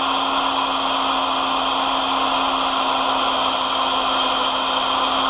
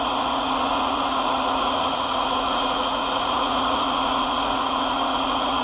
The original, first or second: first